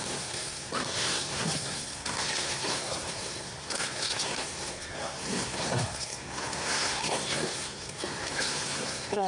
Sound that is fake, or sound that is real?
fake